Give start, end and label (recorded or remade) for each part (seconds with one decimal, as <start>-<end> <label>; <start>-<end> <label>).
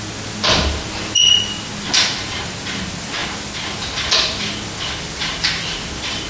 0.0-6.3 recorded